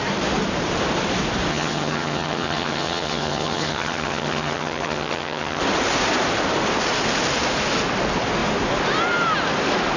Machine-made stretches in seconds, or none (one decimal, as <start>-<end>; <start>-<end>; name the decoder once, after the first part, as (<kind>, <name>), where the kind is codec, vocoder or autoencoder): 1.5-5.6 (vocoder, HiFi-GAN)